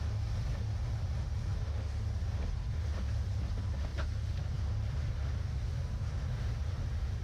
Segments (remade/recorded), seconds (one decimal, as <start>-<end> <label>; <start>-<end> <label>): 0.0-3.9 recorded; 3.9-5.1 remade; 5.1-7.2 recorded